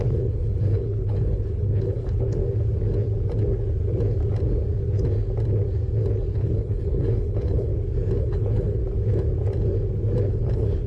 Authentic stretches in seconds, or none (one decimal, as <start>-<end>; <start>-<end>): 2.4-6.3; 7.7-8.2; 8.8-10.3